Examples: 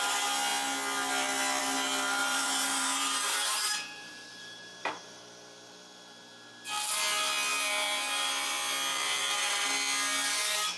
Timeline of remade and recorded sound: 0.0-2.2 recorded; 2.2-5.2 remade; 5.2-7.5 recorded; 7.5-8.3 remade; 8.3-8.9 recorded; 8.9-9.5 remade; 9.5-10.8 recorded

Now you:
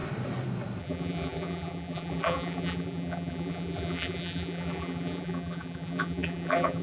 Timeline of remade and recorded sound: 0.0-0.8 recorded; 0.8-6.8 remade

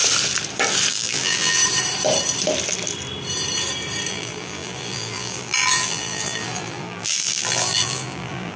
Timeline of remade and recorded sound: 0.0-0.9 recorded; 0.9-1.6 remade; 1.6-4.1 recorded; 4.1-8.6 remade

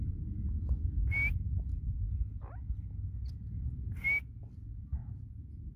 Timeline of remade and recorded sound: 0.0-5.8 recorded

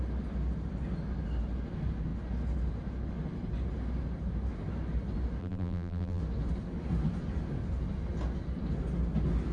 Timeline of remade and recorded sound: 0.0-5.4 recorded; 5.4-6.2 remade; 6.2-9.5 recorded

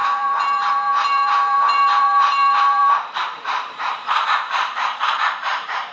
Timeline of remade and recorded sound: 0.0-5.9 remade

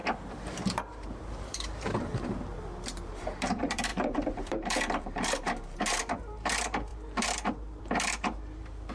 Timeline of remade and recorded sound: 0.0-0.8 recorded; 0.8-8.9 remade

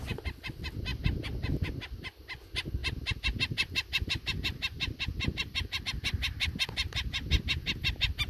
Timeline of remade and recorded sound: 0.0-0.9 recorded; 0.9-1.7 remade; 1.7-2.8 recorded; 2.8-5.8 remade; 5.8-8.3 recorded